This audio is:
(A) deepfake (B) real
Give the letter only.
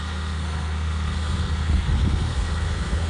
A